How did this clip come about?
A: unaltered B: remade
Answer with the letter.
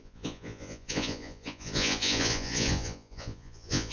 B